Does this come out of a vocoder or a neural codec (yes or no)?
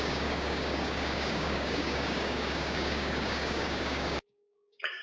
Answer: yes